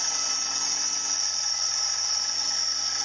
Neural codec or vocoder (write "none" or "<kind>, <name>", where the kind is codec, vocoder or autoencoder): none